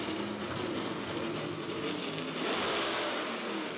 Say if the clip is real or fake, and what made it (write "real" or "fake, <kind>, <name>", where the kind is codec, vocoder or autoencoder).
real